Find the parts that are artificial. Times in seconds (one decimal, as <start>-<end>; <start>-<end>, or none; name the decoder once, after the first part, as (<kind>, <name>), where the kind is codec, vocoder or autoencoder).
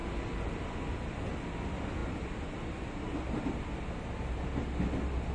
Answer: none